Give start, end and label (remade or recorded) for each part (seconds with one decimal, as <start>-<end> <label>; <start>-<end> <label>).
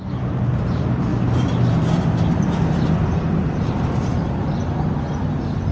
0.0-4.4 remade; 4.4-5.7 recorded